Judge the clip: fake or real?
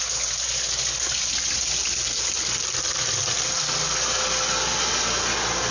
real